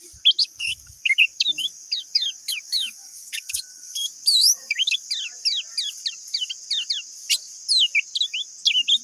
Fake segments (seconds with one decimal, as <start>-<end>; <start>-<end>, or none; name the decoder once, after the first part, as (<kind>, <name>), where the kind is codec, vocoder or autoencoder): 0.4-5.1 (codec, DAC)